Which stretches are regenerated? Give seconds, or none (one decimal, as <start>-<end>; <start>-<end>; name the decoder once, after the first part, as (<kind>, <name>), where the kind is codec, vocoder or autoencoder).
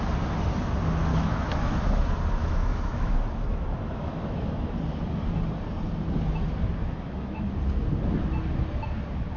1.1-2.0 (autoencoder, DAC-VAE); 2.4-4.7; 6.8-7.5